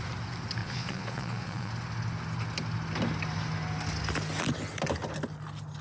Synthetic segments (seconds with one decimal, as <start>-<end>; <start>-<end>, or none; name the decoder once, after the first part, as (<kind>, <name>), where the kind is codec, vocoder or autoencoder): 0.6-1.7 (vocoder, Vocos)